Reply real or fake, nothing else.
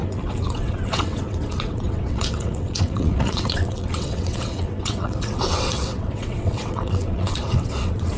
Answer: fake